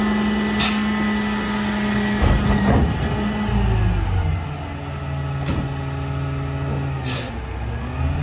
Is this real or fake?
real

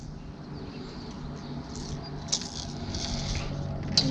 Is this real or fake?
real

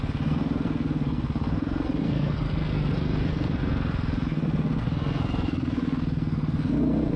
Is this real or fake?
fake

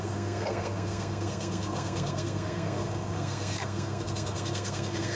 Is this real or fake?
fake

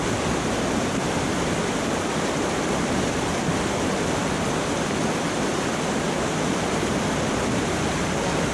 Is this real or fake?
real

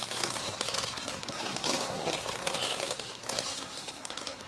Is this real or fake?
fake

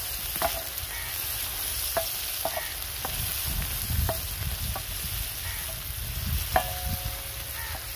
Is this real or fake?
real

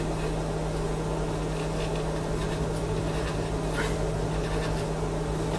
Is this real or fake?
real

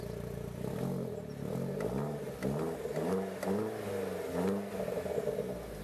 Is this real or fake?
real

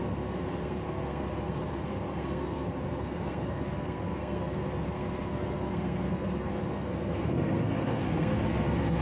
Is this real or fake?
fake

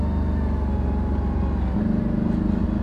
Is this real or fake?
real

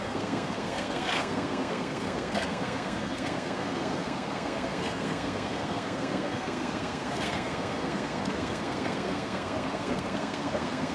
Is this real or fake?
fake